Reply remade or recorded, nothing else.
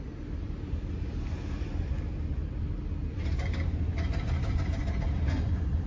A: recorded